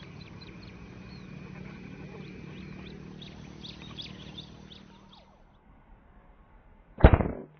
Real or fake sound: real